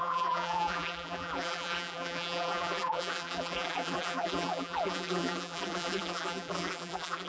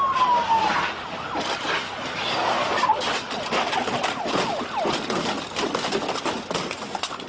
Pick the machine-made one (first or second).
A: first